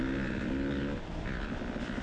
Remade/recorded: recorded